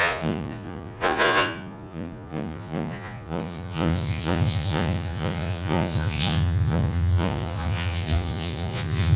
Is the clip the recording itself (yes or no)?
no